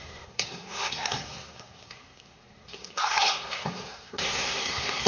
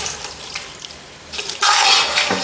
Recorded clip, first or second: second